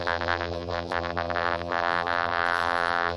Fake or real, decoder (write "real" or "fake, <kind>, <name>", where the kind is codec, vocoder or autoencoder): fake, vocoder, BigVGAN v2